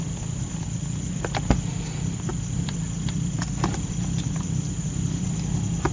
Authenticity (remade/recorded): recorded